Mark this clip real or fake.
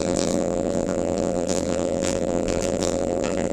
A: fake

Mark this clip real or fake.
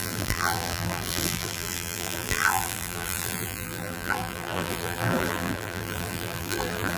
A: fake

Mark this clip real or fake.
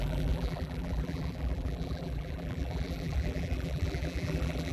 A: fake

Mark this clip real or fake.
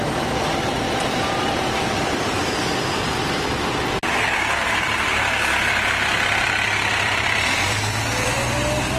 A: fake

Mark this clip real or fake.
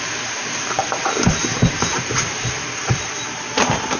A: fake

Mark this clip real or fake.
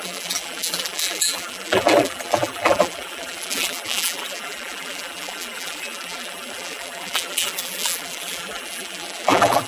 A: fake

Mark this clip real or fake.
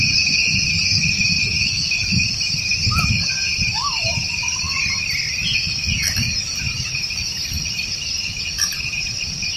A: fake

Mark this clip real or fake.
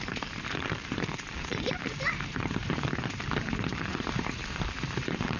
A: fake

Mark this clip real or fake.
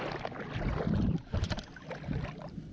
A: real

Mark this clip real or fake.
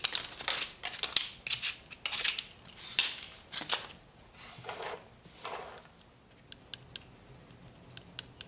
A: real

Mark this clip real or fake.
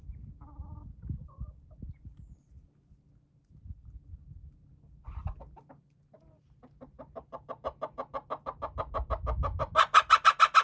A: real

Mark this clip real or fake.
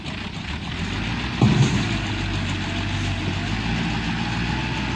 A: real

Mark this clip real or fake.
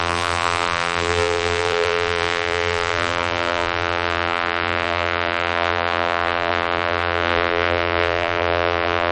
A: fake